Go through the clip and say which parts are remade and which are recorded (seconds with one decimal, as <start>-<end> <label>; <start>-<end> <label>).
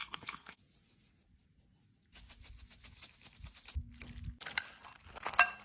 0.0-0.6 remade; 0.6-5.6 recorded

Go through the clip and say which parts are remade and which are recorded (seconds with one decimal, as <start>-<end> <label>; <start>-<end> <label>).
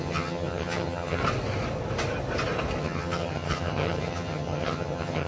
0.0-1.2 remade; 1.2-2.8 recorded; 2.8-5.3 remade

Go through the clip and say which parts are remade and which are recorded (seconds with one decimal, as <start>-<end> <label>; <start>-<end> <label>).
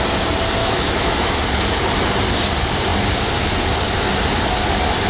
0.0-0.6 recorded; 0.6-1.4 remade; 1.4-5.1 recorded